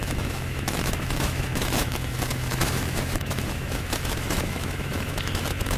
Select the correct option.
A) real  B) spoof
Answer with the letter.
B